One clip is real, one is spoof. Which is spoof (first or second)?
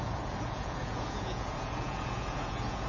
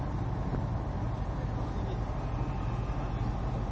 first